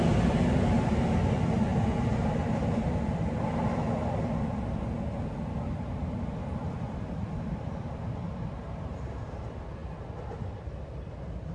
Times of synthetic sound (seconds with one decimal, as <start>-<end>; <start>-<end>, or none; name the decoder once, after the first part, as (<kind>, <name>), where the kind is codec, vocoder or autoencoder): none